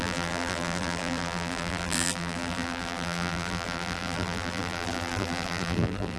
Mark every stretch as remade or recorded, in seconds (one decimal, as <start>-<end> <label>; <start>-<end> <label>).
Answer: 0.0-6.2 remade

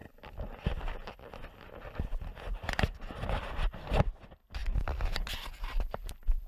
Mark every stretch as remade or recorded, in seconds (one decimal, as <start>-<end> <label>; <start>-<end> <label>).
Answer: 0.0-2.3 recorded; 2.3-6.5 remade

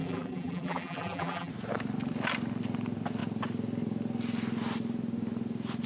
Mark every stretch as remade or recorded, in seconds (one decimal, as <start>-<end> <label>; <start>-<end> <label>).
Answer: 0.0-1.5 remade; 1.5-5.9 recorded

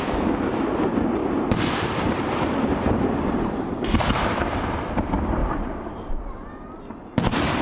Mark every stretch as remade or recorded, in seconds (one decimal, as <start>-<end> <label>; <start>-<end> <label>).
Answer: 0.0-1.2 recorded; 1.2-4.8 remade; 4.8-5.4 recorded; 5.4-6.1 remade; 6.1-7.6 recorded